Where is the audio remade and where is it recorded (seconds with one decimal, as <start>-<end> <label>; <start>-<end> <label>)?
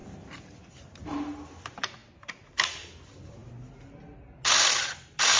0.0-5.4 recorded